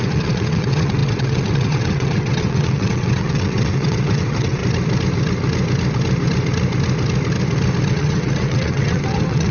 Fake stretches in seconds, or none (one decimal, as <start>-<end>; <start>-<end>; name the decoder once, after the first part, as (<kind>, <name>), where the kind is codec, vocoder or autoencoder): 0.0-4.6 (vocoder, WaveNeXt); 7.9-9.5